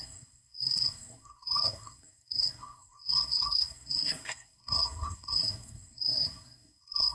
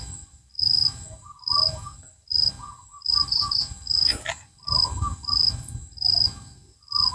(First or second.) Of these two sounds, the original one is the second